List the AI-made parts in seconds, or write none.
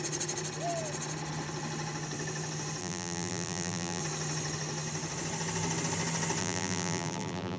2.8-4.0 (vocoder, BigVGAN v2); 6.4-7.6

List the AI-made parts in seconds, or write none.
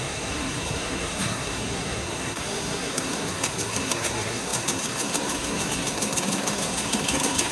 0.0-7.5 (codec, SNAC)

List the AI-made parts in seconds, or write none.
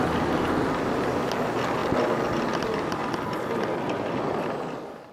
none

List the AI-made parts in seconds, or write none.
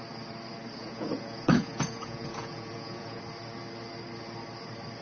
0.8-3.2 (vocoder, Vocos)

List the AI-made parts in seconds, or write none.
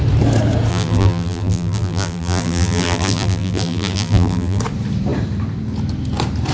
0.7-4.6 (vocoder, BigVGAN v2)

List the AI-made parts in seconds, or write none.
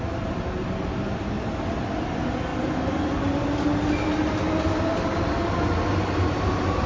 none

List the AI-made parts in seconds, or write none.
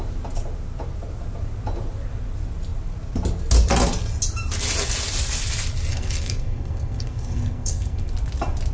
5.9-8.1 (codec, SNAC)